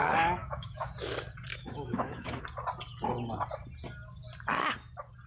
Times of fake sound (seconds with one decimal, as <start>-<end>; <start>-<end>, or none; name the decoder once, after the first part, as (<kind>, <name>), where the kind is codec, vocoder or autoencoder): 0.4-0.9 (autoencoder, DAC-VAE); 1.5-2.4